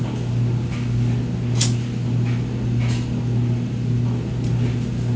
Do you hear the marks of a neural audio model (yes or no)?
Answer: no